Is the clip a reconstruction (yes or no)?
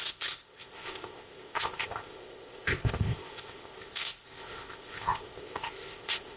yes